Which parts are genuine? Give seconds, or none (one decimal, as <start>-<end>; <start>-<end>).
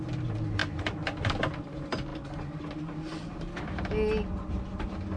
0.0-5.2